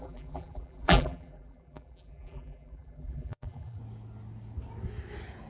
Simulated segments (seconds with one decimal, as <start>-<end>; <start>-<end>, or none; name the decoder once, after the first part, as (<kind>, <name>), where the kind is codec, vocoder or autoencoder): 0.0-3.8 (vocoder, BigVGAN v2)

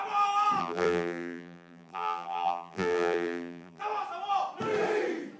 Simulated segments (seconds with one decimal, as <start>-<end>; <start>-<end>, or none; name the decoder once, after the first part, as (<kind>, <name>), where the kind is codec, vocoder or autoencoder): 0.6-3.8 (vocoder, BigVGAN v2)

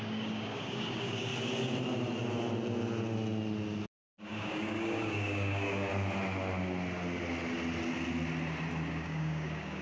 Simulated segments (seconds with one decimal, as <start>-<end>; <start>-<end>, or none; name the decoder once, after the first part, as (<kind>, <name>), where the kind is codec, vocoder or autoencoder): 0.0-1.3 (codec, DAC); 4.2-5.9; 8.9-9.8